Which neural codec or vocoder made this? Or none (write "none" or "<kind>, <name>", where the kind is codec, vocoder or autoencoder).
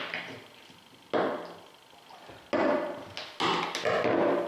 none